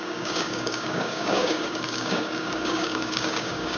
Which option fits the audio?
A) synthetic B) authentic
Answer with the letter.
A